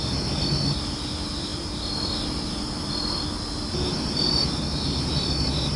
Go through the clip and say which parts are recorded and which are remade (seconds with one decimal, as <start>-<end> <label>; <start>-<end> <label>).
0.0-5.8 recorded